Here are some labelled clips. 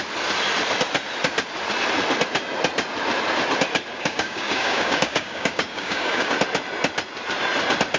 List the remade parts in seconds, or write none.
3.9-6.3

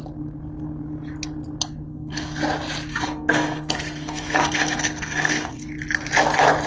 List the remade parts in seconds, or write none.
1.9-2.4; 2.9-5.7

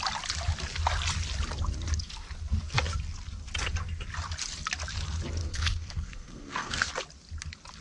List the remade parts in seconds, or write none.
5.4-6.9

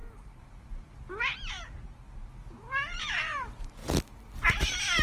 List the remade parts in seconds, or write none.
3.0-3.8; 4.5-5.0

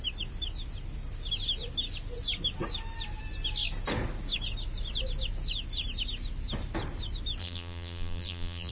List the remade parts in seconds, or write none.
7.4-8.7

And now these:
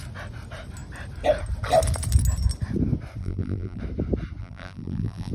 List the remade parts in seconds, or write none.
3.2-3.8; 4.4-5.3